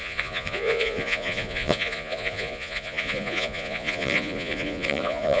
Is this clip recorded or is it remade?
remade